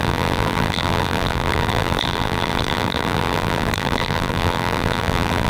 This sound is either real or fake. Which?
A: fake